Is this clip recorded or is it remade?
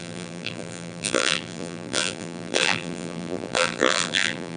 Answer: remade